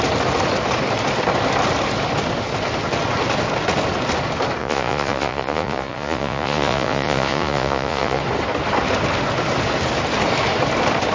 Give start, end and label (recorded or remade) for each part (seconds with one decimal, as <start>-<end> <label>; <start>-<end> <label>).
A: 0.0-4.6 recorded; 4.6-8.2 remade; 8.2-11.1 recorded